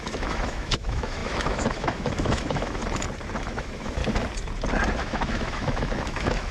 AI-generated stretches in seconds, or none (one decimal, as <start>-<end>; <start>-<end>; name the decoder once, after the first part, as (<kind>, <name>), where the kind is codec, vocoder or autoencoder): 0.0-2.8 (autoencoder, DAC-VAE); 3.4-4.0; 5.0-6.5